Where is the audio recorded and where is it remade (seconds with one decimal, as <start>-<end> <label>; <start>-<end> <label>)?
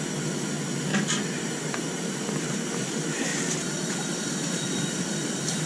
0.0-0.9 remade; 0.9-1.4 recorded; 1.4-3.3 remade; 3.3-4.0 recorded; 4.0-5.7 remade